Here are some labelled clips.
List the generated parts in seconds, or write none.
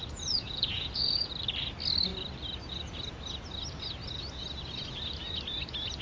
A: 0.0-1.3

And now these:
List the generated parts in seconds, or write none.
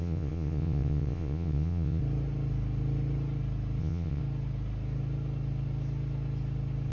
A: 0.0-2.0; 3.8-4.2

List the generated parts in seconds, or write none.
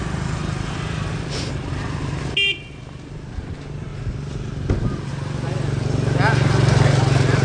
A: none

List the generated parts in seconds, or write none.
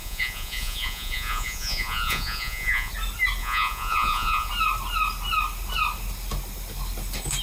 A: 0.0-2.9; 3.4-4.5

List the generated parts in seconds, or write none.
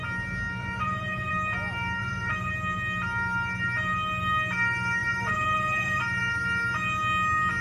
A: 0.6-1.3; 2.0-2.5; 5.0-6.0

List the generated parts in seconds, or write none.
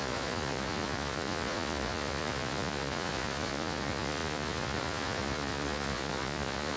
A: 0.0-6.8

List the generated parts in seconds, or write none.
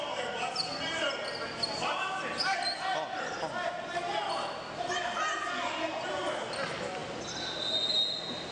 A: none